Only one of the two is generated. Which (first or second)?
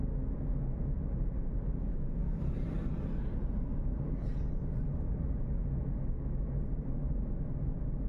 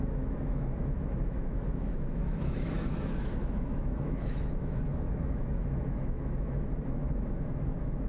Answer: second